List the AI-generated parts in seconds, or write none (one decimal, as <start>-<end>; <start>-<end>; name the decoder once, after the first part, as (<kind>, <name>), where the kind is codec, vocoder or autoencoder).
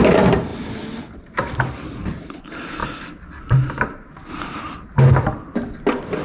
none